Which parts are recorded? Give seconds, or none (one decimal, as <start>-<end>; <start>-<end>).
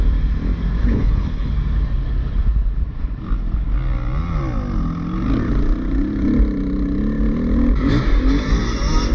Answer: 0.0-0.8; 1.5-9.1